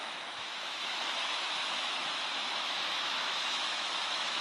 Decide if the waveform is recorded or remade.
remade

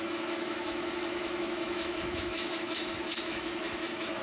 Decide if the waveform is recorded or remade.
remade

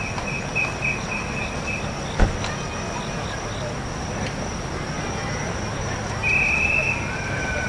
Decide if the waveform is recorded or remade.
recorded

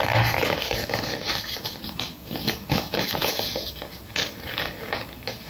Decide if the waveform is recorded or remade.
remade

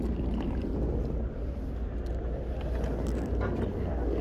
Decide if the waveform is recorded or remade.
recorded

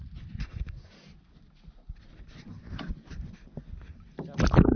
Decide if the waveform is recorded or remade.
recorded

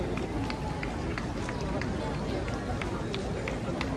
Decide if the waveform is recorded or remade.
recorded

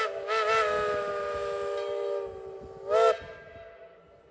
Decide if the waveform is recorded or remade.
recorded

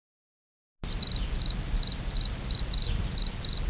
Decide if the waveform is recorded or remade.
recorded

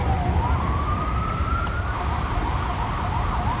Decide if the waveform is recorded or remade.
recorded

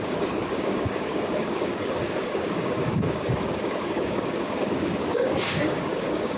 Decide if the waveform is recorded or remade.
remade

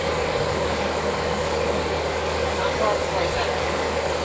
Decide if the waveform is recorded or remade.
remade